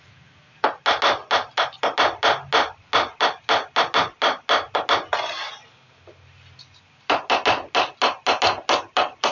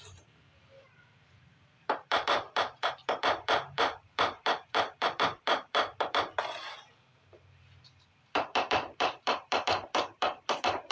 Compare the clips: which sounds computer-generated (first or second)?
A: second